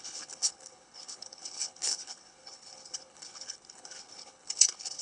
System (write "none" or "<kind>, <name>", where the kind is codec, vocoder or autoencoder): codec, HILCodec